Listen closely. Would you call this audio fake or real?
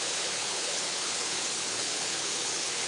fake